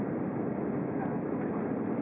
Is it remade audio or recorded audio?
recorded